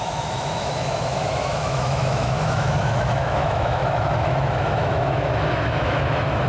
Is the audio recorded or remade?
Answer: remade